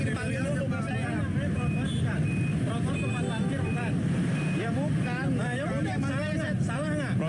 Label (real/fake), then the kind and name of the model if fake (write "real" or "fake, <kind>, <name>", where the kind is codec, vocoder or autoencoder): real